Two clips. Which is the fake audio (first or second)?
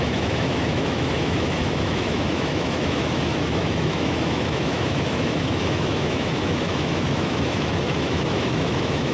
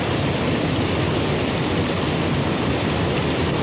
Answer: first